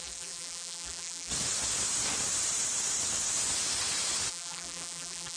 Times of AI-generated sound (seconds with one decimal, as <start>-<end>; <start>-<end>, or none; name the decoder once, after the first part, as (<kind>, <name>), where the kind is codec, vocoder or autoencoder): 0.0-1.3 (vocoder, BigVGAN v2); 4.3-5.4